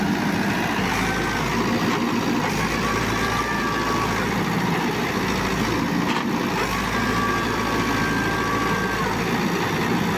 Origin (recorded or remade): recorded